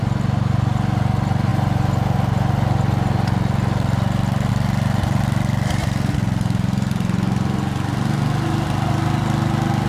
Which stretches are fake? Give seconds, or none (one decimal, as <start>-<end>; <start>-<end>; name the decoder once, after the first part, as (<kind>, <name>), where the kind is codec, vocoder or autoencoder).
none